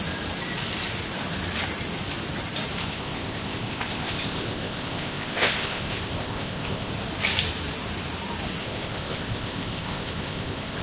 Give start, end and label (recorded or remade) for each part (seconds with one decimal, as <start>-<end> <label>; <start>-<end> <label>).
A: 0.0-2.8 recorded; 2.8-6.9 remade; 6.9-8.6 recorded; 8.6-10.8 remade